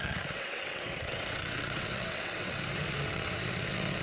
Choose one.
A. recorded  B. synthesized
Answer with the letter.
B